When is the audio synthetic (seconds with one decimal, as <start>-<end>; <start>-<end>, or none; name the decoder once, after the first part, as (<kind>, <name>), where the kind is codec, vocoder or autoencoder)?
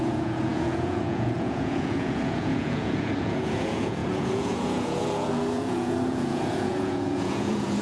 0.0-7.8 (vocoder, Vocos)